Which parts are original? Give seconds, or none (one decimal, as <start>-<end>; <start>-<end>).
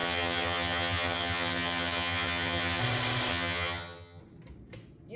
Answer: 2.8-3.3; 4.2-5.2